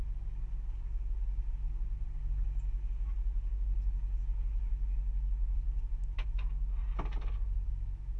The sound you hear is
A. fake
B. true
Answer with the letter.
B